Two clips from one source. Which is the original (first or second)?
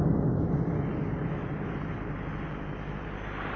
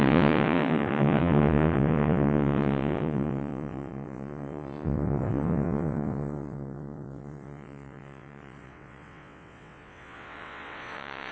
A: first